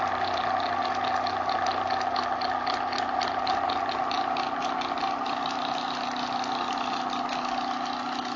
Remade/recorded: recorded